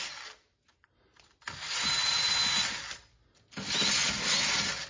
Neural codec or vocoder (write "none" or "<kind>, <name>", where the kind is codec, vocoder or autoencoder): none